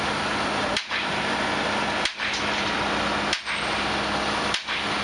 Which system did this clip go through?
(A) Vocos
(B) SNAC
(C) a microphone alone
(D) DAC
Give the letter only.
C